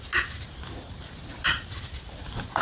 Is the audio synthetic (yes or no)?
no